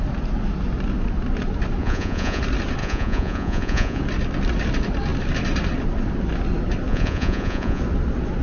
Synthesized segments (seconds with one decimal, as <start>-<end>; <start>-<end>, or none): 1.8-2.4; 2.8-4.0; 6.9-7.8